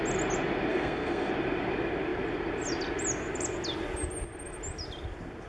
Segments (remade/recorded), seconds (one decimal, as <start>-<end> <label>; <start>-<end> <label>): 0.0-0.7 recorded; 0.7-1.3 remade; 1.3-5.5 recorded